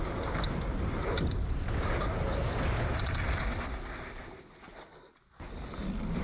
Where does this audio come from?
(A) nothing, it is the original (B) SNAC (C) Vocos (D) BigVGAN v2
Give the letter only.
A